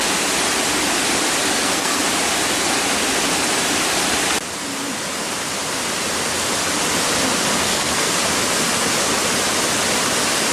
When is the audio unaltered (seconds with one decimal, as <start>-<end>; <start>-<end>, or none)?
0.0-1.5; 2.0-7.6; 8.1-10.5